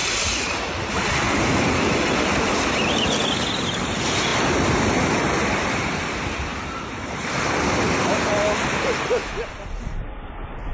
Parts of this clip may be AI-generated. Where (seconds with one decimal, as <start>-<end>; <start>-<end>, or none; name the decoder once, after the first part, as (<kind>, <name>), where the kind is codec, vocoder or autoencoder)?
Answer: none